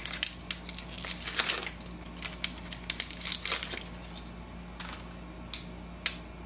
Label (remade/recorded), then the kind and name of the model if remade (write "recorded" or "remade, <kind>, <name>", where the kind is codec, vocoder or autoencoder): recorded